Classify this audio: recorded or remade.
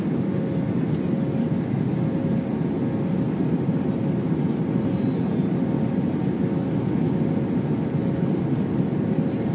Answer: recorded